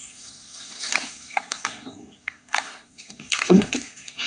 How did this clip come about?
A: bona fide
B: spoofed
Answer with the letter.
B